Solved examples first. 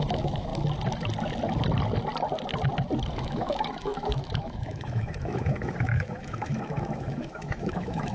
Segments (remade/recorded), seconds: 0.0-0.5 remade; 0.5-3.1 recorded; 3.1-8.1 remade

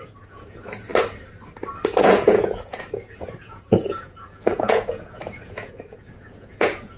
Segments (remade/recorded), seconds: 0.0-0.9 remade; 0.9-2.0 recorded; 2.0-7.0 remade